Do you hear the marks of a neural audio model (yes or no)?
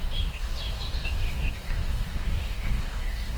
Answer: yes